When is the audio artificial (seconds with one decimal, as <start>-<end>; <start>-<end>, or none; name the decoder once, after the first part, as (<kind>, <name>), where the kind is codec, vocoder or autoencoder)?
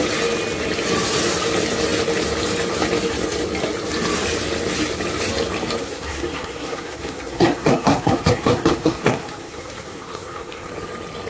5.8-10.7 (codec, SNAC)